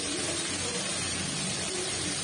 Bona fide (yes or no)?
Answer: yes